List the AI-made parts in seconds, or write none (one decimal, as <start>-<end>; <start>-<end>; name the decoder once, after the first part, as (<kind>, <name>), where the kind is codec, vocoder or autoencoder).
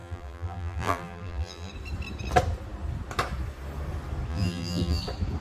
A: 0.0-1.7 (vocoder, BigVGAN v2); 4.3-5.0